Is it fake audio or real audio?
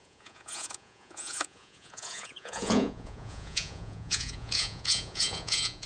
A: fake